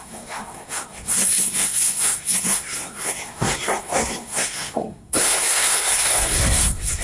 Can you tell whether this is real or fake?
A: fake